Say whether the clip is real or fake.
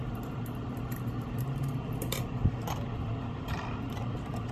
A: fake